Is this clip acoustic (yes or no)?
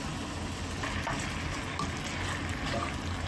yes